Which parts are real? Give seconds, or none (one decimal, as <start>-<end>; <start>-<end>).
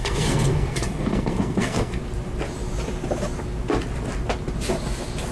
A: 2.0-5.3